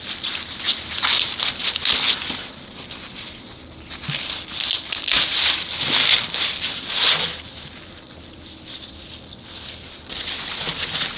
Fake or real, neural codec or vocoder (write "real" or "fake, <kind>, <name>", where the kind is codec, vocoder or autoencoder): real